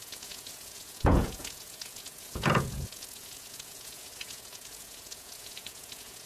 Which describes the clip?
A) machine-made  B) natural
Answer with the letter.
A